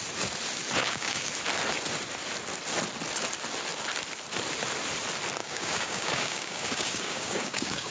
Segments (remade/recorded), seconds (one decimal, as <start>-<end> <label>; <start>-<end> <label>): 0.0-0.8 recorded; 0.8-1.3 remade; 1.3-5.4 recorded; 5.4-7.9 remade